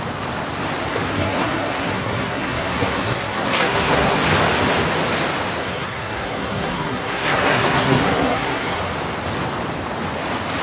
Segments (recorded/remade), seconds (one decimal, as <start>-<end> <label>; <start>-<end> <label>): 0.0-1.2 recorded; 1.2-4.2 remade; 4.2-5.6 recorded; 5.6-8.9 remade; 8.9-10.6 recorded